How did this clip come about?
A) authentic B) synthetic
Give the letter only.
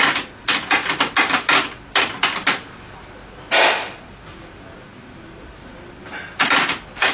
A